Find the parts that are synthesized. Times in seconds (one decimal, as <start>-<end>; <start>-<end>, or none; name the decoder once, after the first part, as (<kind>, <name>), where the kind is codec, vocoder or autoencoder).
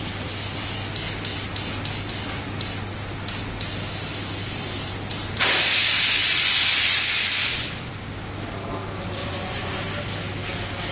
6.2-7.9 (vocoder, Vocos); 9.2-9.8